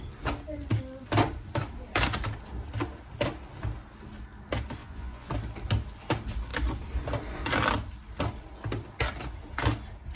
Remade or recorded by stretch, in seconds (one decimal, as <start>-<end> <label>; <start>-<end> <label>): 0.0-4.8 recorded; 4.8-5.3 remade; 5.3-10.2 recorded

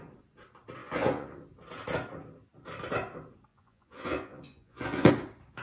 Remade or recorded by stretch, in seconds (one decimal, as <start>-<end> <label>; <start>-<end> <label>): 0.0-0.8 recorded; 0.8-1.3 remade; 1.3-3.5 recorded; 3.5-5.1 remade; 5.1-5.6 recorded